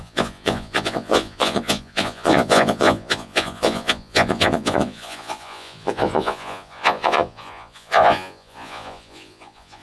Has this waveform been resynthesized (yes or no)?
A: yes